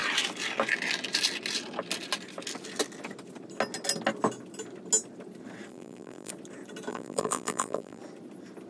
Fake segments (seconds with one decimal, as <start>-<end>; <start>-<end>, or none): 5.7-6.3; 6.9-8.0